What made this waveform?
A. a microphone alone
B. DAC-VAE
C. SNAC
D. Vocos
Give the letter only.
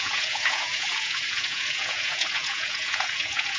D